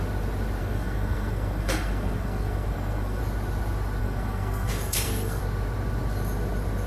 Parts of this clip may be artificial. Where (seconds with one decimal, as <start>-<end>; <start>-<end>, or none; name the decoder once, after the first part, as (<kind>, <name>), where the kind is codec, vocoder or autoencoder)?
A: 0.6-3.2 (codec, SNAC); 4.0-5.4